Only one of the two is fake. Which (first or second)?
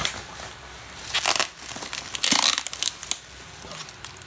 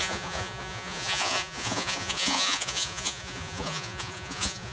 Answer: second